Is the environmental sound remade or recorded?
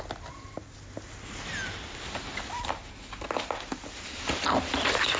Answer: recorded